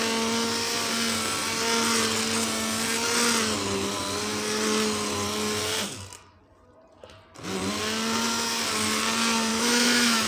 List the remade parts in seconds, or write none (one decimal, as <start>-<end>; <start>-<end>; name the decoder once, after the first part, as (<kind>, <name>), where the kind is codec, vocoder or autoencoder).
9.5-10.3 (autoencoder, DAC-VAE)